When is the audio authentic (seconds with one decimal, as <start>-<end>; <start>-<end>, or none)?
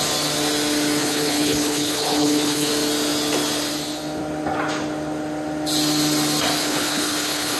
0.0-1.0; 2.7-6.6